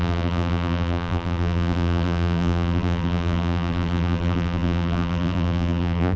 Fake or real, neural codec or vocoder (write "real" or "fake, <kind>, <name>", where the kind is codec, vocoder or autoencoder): fake, vocoder, BigVGAN v2